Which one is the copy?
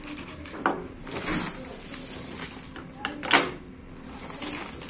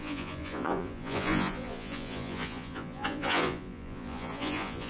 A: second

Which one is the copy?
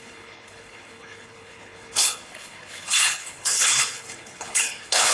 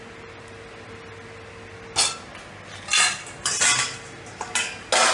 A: first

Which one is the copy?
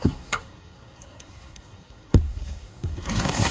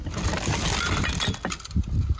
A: first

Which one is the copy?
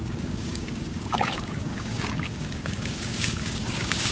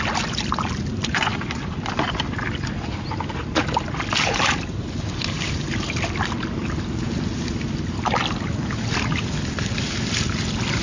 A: first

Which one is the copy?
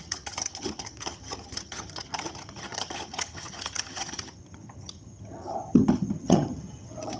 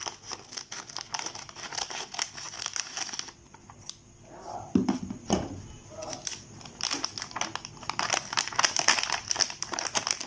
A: first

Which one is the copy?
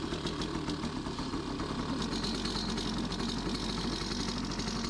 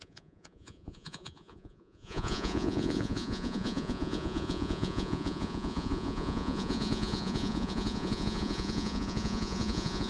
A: second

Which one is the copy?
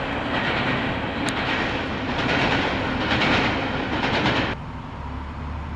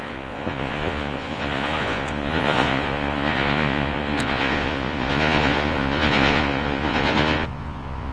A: second